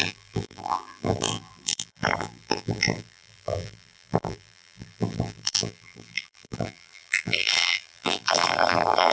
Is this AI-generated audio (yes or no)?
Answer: yes